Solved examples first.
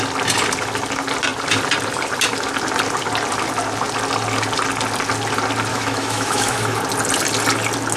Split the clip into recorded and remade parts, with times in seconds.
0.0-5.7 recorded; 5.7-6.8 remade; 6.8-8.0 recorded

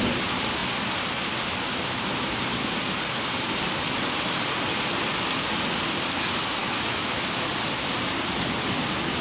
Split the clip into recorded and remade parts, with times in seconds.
0.0-6.6 recorded; 6.6-7.2 remade; 7.2-9.2 recorded

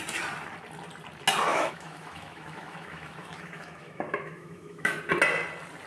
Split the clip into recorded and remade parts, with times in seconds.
0.0-1.5 recorded; 1.5-5.0 remade; 5.0-5.9 recorded

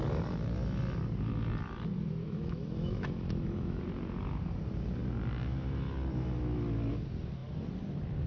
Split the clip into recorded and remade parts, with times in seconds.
0.0-2.2 recorded; 2.2-3.8 remade; 3.8-8.3 recorded